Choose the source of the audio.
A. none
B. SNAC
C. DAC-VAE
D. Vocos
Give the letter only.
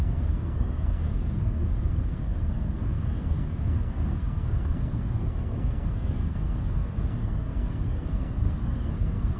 B